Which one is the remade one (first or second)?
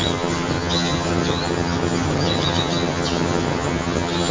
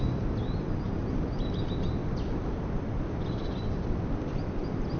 first